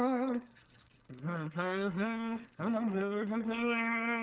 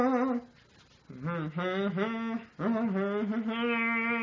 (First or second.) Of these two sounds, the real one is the second